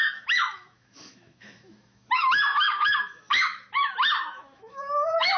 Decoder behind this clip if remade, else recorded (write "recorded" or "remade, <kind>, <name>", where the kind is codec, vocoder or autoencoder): remade, autoencoder, DAC-VAE